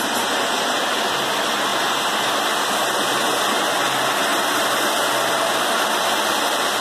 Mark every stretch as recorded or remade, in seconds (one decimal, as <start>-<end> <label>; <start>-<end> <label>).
0.0-6.8 recorded